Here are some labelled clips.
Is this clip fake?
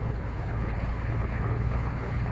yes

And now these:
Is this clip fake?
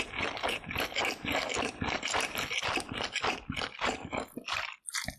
yes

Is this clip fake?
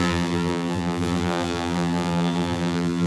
yes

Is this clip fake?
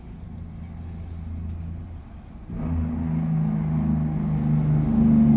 no